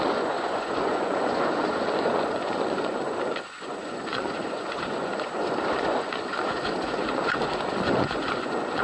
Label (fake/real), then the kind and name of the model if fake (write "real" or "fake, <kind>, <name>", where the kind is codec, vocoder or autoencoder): fake, vocoder, Vocos